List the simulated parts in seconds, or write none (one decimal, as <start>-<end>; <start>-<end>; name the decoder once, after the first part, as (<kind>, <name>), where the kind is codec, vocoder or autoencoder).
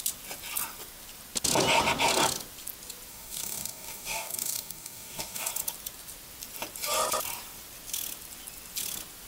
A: 3.1-5.5 (codec, DAC)